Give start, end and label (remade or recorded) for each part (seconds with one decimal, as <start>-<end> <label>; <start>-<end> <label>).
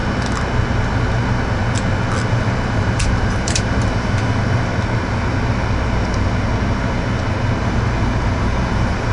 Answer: 0.0-2.3 recorded; 2.3-4.7 remade; 4.7-7.6 recorded; 7.6-9.1 remade